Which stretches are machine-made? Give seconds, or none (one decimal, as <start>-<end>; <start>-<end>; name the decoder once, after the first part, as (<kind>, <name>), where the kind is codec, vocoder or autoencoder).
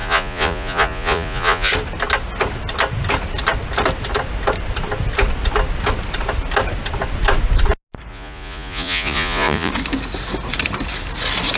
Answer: 0.0-1.7 (vocoder, Vocos); 8.1-9.7